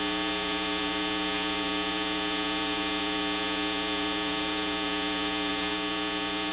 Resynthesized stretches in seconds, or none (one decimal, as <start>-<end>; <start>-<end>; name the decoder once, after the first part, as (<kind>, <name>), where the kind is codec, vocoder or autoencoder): 0.0-6.5 (vocoder, Vocos)